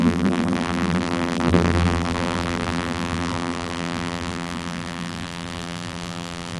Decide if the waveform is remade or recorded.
remade